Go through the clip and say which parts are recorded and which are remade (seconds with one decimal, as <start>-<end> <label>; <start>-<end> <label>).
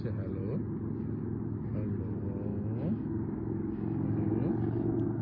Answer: 0.0-2.5 recorded; 2.5-4.3 remade; 4.3-5.2 recorded